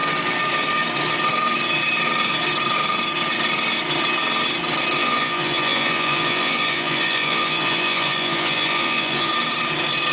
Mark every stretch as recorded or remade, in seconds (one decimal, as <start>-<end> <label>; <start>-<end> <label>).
0.0-5.0 recorded; 5.0-9.3 remade; 9.3-10.1 recorded